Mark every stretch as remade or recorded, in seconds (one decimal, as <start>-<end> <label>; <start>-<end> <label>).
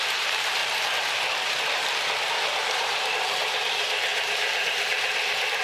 0.0-0.6 remade; 0.6-2.3 recorded; 2.3-5.6 remade